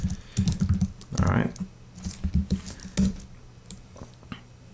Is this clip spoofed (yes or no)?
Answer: no